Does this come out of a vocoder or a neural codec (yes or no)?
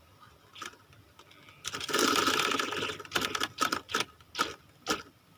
no